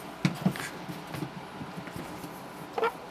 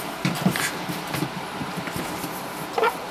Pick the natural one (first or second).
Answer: first